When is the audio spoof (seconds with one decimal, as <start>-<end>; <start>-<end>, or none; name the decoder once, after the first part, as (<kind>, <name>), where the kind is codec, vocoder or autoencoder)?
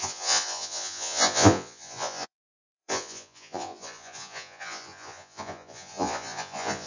0.0-6.9 (vocoder, Vocos)